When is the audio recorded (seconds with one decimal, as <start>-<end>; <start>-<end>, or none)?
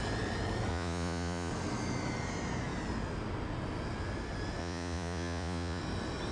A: 0.0-0.7; 1.5-4.6; 5.8-6.3